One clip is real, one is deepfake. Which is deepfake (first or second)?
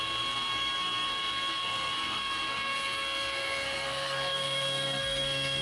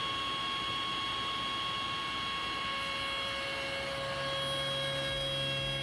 first